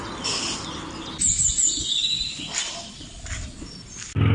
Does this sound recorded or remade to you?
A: recorded